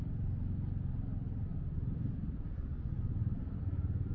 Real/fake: real